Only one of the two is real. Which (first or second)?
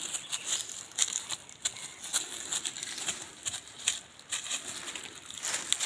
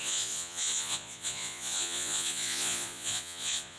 first